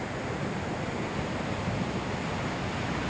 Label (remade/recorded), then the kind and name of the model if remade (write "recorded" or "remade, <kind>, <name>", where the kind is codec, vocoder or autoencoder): recorded